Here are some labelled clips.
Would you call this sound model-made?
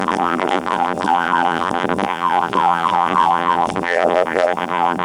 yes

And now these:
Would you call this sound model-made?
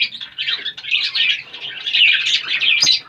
no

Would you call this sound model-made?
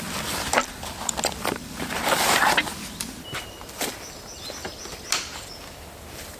no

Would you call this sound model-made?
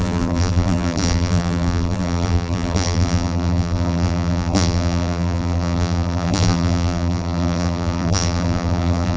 yes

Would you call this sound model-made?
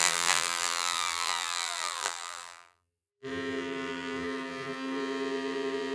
yes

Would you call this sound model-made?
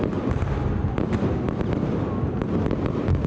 no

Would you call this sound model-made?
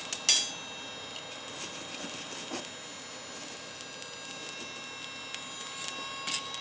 no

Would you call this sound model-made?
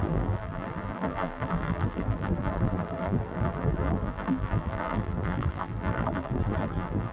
yes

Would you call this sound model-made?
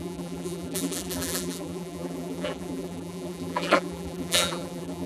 yes